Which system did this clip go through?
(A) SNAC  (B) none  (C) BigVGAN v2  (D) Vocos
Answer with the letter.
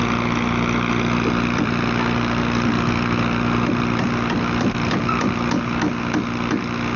B